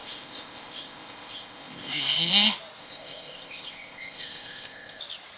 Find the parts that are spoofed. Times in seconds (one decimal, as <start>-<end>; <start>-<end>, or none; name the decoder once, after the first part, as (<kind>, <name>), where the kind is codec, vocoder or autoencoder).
0.0-2.3 (codec, ZipCodec); 2.8-5.0